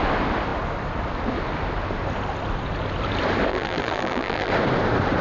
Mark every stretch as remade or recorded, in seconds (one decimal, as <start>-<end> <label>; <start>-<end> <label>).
0.0-3.5 recorded; 3.5-4.5 remade; 4.5-5.2 recorded